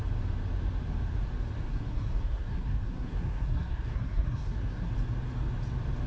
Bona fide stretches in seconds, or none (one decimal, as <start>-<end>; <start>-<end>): 0.0-1.7; 4.9-6.1